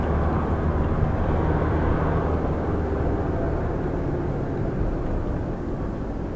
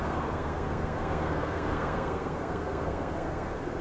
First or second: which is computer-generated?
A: second